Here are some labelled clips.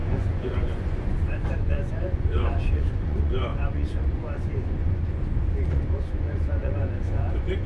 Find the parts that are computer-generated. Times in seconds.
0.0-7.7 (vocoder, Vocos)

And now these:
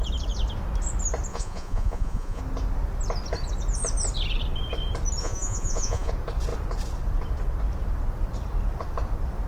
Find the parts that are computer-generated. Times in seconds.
1.3-2.4 (vocoder, Vocos); 5.2-6.1

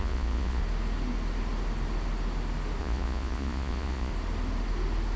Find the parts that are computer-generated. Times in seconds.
0.0-0.6 (vocoder, Vocos); 2.8-4.1

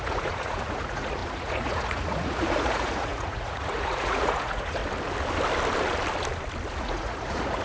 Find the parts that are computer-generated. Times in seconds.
0.0-4.8 (vocoder, Vocos); 6.8-7.6